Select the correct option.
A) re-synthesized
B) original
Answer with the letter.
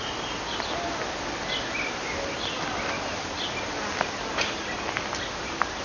B